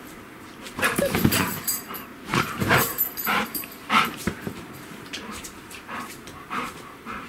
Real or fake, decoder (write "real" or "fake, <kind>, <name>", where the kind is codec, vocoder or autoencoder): fake, vocoder, BigVGAN v2